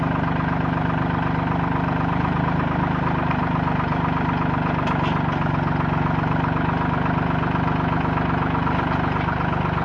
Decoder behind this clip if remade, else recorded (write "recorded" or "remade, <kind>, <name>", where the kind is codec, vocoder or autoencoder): recorded